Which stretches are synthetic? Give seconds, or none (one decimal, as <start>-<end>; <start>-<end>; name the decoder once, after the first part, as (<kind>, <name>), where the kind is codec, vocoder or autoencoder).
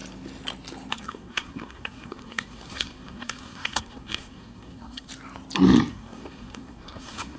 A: 0.9-5.1 (codec, SNAC); 5.9-7.4